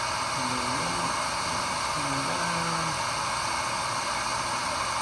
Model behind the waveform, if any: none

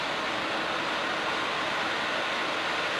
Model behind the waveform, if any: none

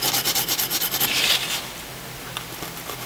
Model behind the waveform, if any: none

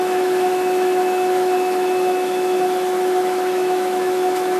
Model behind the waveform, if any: autoencoder, DAC-VAE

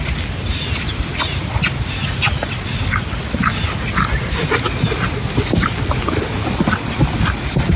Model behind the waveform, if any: none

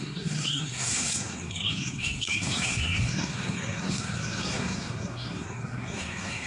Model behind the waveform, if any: codec, SNAC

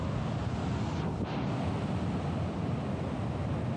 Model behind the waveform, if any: none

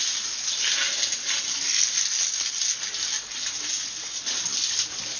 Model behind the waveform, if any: none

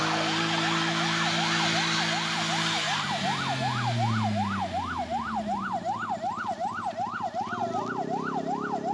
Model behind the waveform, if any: none